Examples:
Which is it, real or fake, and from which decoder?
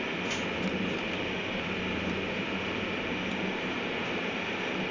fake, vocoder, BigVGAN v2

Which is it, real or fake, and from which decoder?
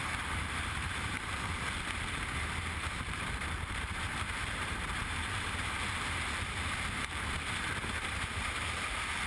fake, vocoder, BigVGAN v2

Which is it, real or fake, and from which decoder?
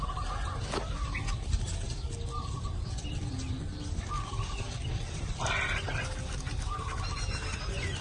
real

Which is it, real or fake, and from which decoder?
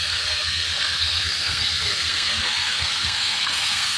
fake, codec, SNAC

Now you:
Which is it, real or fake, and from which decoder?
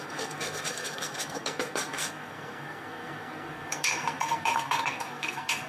fake, codec, SNAC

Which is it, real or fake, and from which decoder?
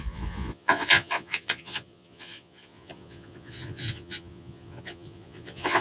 fake, vocoder, Vocos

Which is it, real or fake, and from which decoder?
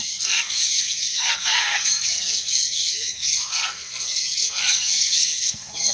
fake, codec, SNAC